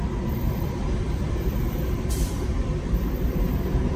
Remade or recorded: remade